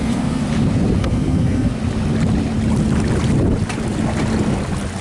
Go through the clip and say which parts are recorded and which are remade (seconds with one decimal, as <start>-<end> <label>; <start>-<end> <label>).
0.0-0.4 remade; 0.4-1.0 recorded; 1.0-1.7 remade; 1.7-5.0 recorded